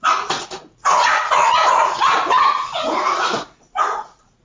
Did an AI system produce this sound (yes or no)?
yes